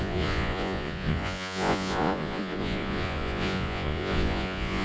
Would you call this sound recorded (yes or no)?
no